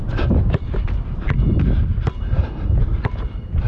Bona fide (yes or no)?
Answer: yes